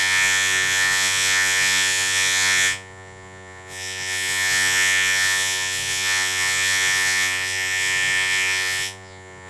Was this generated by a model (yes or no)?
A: yes